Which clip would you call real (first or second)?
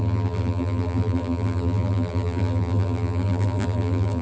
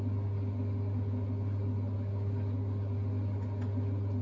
second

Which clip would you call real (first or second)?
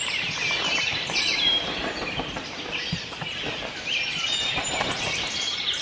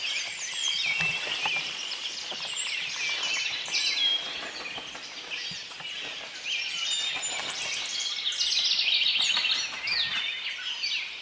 second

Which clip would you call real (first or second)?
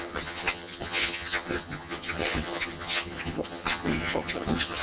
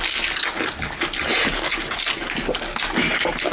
second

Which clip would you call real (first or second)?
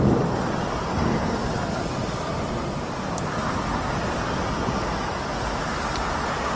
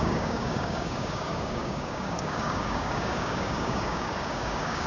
first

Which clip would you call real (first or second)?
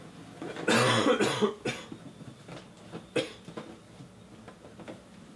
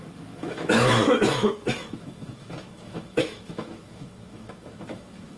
first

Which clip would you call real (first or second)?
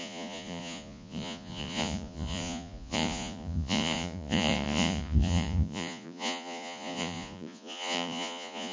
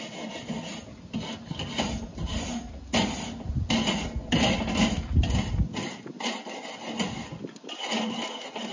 second